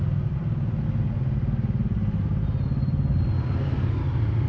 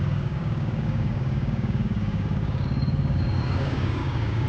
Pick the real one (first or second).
first